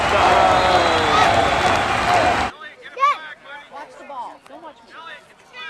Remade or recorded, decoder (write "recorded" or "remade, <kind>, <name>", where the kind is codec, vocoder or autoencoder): recorded